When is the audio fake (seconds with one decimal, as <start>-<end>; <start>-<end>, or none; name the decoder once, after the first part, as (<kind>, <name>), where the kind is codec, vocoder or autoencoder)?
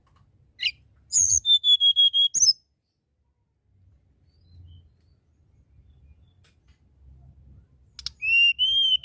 none